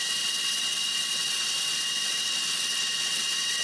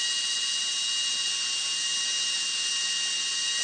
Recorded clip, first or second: second